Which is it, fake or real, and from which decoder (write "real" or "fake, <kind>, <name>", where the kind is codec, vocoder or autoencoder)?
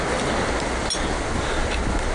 real